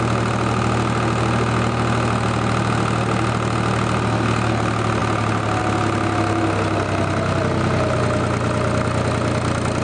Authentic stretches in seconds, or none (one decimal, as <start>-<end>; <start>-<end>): 0.0-9.8